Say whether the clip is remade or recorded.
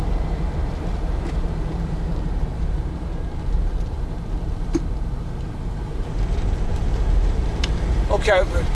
remade